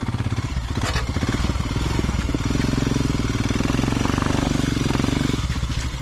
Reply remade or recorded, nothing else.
recorded